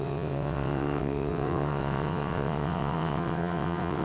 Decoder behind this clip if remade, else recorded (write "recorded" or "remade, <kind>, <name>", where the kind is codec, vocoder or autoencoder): remade, vocoder, WaveNeXt